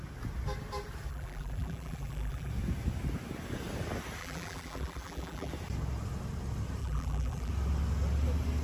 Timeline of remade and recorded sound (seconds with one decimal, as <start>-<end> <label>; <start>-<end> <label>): 0.0-1.1 recorded; 1.1-2.5 remade; 2.5-4.2 recorded; 4.2-5.5 remade; 5.5-6.8 recorded; 6.8-7.5 remade; 7.5-8.6 recorded

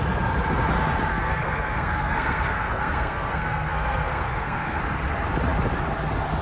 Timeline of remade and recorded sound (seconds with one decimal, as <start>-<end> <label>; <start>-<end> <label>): 0.0-1.1 recorded; 1.1-4.8 remade; 4.8-6.4 recorded

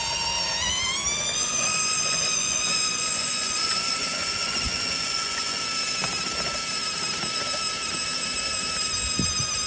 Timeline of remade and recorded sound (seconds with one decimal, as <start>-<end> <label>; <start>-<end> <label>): 0.0-1.4 recorded; 1.4-5.6 remade; 5.6-9.7 recorded

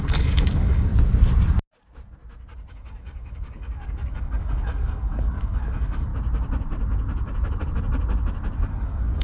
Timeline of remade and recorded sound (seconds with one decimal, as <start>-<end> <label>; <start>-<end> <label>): 0.0-0.9 remade; 0.9-2.7 recorded; 2.7-6.1 remade; 6.1-8.7 recorded; 8.7-9.2 remade

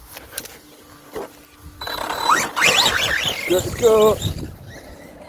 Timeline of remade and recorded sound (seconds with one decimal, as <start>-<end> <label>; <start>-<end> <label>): 0.0-5.3 recorded

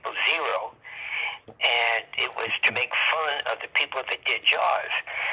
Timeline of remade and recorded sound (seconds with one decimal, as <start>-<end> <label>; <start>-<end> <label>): 0.0-5.3 recorded